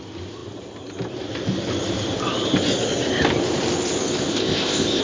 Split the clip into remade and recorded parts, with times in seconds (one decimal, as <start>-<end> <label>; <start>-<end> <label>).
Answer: 0.0-4.3 recorded; 4.3-5.0 remade